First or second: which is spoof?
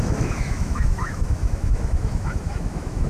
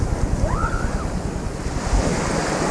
first